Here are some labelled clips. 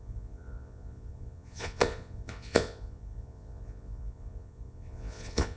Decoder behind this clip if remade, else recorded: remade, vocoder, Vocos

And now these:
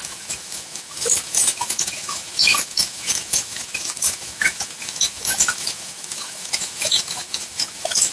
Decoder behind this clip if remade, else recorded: remade, autoencoder, DAC-VAE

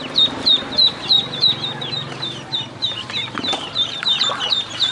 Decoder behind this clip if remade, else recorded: remade, vocoder, BigVGAN v2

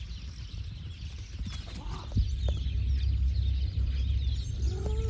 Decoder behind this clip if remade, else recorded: recorded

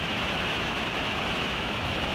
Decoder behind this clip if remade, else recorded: remade, autoencoder, DAC-VAE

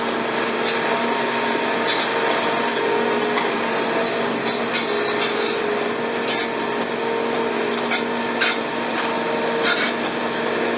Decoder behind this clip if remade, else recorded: recorded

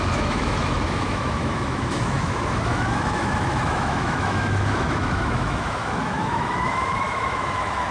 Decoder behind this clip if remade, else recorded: remade, autoencoder, DAC-VAE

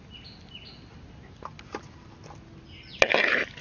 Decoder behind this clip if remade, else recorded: recorded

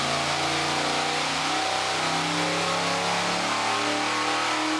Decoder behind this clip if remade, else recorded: recorded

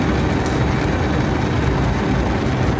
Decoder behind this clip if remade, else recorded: recorded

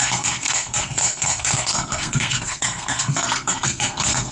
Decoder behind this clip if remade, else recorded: remade, codec, SNAC